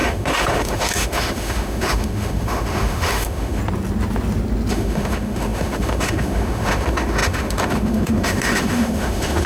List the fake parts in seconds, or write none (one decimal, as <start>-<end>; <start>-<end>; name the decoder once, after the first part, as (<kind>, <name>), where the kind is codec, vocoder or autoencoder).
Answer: 0.0-3.6 (autoencoder, DAC-VAE); 4.7-9.5

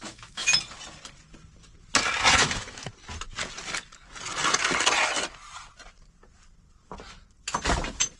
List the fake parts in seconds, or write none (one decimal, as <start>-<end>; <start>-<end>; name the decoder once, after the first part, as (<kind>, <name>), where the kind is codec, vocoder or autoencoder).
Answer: 0.0-0.4 (autoencoder, DAC-VAE); 2.3-2.9

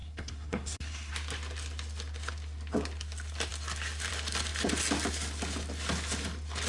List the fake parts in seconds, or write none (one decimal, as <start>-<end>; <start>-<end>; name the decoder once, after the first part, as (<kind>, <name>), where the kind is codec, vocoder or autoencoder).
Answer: 0.0-1.1 (codec, SNAC)

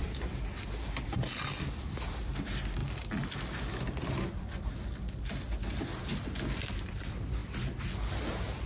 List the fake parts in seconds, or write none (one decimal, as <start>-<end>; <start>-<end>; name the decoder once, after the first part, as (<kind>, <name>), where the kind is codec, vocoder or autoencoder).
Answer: none